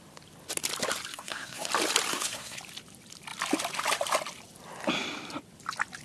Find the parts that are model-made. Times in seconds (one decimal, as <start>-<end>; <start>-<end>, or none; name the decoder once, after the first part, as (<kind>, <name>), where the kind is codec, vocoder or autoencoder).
1.1-1.7 (codec, SNAC); 2.1-2.6